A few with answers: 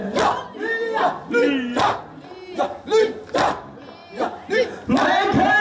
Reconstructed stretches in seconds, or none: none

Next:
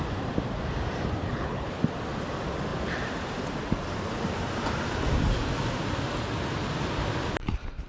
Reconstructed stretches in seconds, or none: 1.2-1.8 (codec, HILCodec)

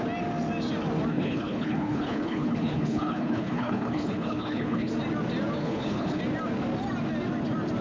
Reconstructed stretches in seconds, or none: 1.1-4.9 (codec, HILCodec); 5.6-6.2

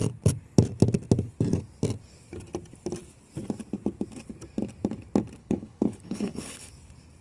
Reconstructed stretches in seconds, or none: 5.4-6.7 (codec, HILCodec)

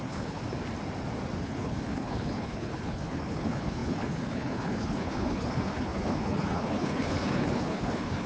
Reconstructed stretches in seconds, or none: 0.0-0.4 (codec, HILCodec); 1.4-8.3

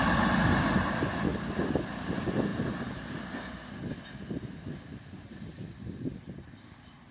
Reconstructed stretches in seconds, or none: none

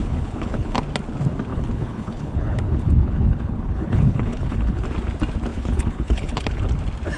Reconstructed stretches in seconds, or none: 0.0-0.8 (codec, HILCodec); 1.5-4.8; 5.5-6.6

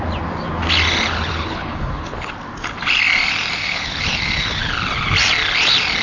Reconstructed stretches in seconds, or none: 1.3-2.3 (codec, HILCodec); 3.6-4.7